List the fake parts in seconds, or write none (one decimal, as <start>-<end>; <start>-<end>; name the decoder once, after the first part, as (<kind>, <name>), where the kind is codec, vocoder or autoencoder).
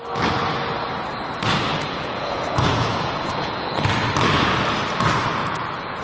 1.7-3.9 (vocoder, Vocos); 5.4-6.0